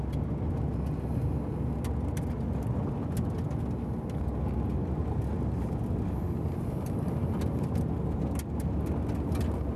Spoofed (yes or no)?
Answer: no